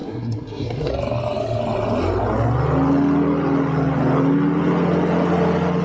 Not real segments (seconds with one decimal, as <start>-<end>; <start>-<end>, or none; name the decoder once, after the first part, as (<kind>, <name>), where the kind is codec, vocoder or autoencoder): 0.0-0.9 (codec, SNAC)